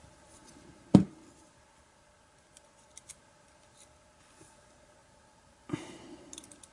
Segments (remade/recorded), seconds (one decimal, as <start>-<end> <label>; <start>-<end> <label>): 0.0-5.0 recorded; 5.0-5.8 remade; 5.8-6.7 recorded